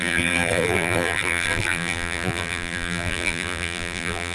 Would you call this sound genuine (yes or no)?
no